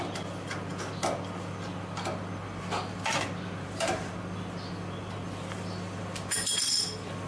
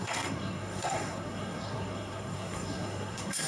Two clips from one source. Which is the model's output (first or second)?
second